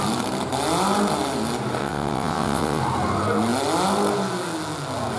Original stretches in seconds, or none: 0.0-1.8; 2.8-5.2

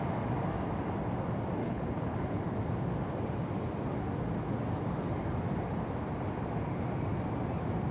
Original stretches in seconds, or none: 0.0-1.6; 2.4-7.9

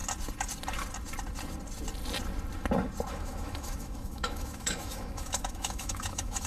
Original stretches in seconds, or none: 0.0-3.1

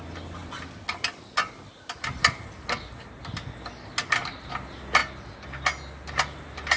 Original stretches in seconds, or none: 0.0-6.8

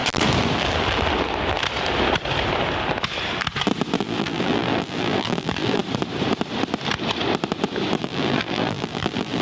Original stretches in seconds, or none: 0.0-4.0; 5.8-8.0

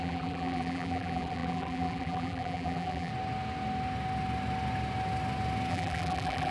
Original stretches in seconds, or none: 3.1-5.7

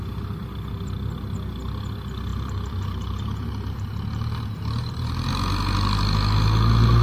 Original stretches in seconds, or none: 0.0-2.3; 5.3-7.0